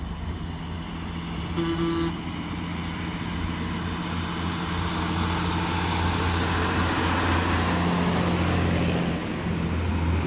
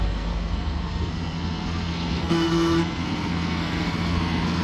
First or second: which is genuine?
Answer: first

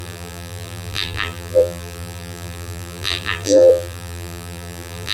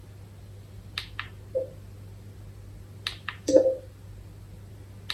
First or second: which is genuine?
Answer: second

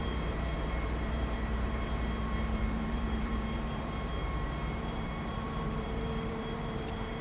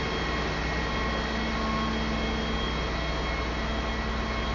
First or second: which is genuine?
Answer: second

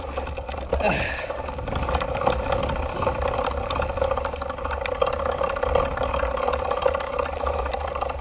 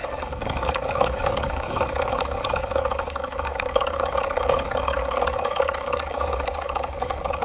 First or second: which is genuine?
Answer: first